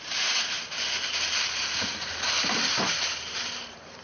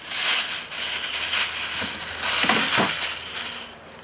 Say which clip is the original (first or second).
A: second